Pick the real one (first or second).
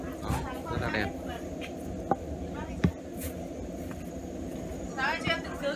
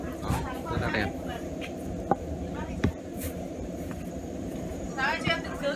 first